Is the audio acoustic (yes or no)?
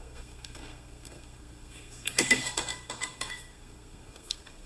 no